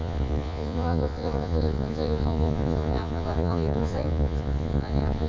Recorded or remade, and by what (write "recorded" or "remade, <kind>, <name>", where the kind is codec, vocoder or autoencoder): remade, vocoder, Vocos